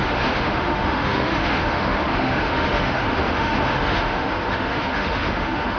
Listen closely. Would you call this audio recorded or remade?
remade